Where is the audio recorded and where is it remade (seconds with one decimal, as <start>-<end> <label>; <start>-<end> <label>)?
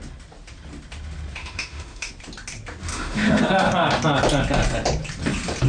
0.0-1.4 recorded; 1.4-2.1 remade; 2.1-2.9 recorded; 2.9-3.4 remade; 3.4-5.7 recorded